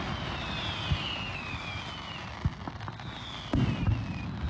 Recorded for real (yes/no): yes